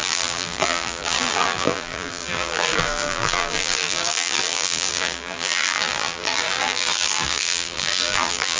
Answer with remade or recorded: remade